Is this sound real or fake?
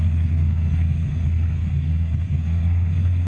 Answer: fake